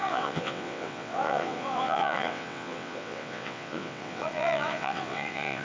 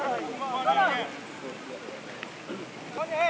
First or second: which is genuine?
second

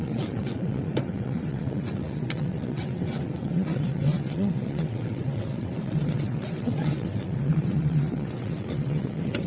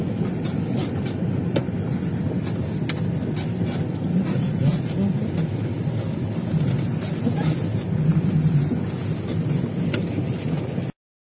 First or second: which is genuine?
second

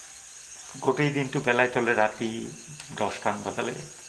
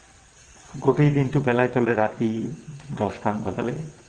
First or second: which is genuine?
first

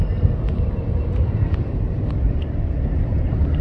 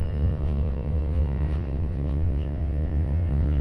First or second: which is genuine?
first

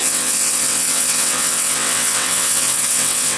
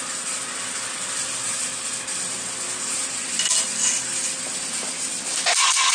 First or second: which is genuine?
second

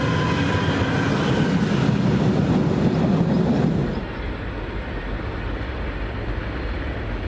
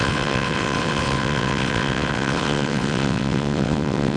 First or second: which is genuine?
first